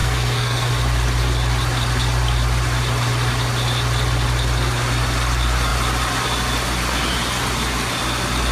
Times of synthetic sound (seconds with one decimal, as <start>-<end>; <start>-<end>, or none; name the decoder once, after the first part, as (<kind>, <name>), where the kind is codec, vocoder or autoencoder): 0.0-0.7 (codec, SNAC)